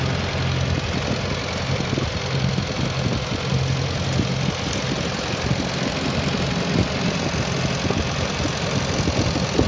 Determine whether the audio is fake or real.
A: real